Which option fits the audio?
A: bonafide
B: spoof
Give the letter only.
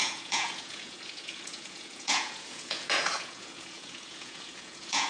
B